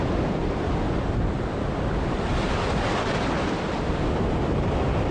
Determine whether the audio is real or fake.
real